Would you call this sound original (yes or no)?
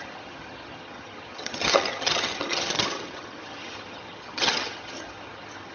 no